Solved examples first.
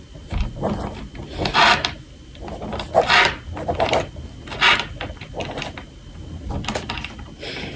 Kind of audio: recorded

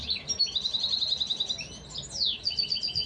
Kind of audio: recorded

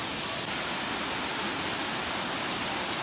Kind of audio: recorded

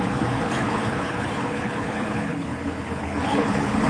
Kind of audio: remade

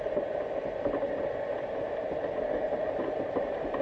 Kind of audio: recorded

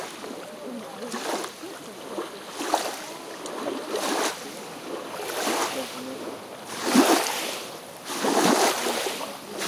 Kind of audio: recorded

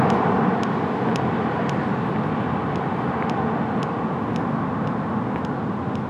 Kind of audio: recorded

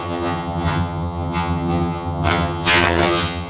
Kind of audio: remade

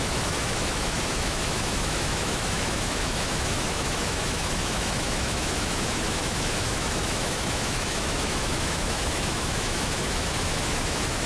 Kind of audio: remade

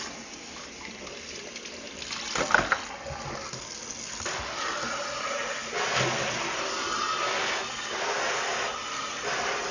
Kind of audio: recorded